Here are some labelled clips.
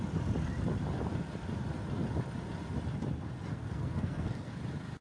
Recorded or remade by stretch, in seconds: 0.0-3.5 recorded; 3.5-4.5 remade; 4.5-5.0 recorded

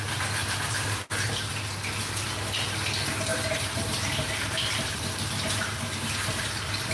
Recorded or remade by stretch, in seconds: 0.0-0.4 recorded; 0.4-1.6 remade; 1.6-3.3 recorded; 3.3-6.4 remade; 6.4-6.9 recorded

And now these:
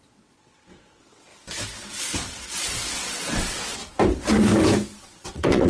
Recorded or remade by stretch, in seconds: 0.0-1.3 remade; 1.3-2.0 recorded; 2.0-3.8 remade; 3.8-5.0 recorded; 5.0-5.7 remade

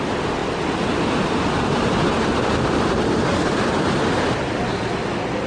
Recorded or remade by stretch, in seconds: 0.0-0.4 recorded; 0.4-3.7 remade; 3.7-4.7 recorded; 4.7-5.5 remade

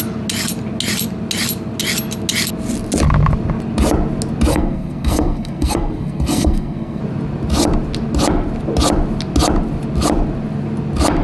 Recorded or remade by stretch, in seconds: 0.0-4.5 recorded; 4.5-7.0 remade; 7.0-11.2 recorded

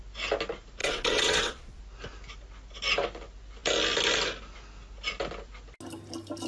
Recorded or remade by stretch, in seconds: 0.0-0.8 recorded; 0.8-1.8 remade; 1.8-6.5 recorded